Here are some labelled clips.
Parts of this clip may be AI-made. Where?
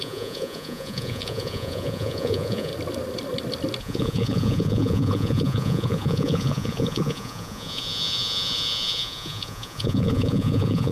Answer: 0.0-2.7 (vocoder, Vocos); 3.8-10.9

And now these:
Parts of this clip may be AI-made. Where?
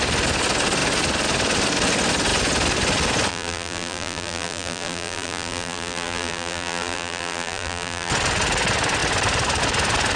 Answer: 3.3-8.1 (vocoder, BigVGAN v2)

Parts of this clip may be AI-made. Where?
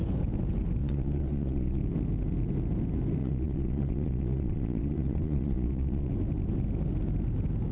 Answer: 0.8-1.8 (vocoder, Vocos); 3.2-6.1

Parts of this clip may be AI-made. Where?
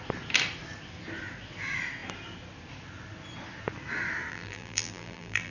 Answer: 4.3-5.5 (vocoder, BigVGAN v2)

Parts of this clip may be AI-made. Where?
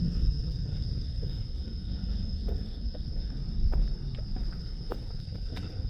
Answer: 0.0-3.4 (codec, SNAC); 4.6-5.9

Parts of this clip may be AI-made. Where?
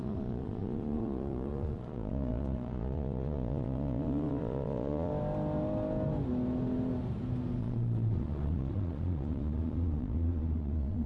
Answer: 0.0-5.1 (vocoder, Vocos); 7.6-11.1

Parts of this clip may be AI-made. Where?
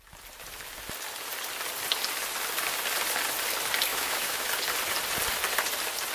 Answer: 3.9-4.5 (autoencoder, DAC-VAE)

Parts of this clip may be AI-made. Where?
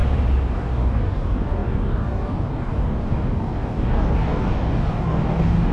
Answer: 0.5-5.7 (codec, DAC)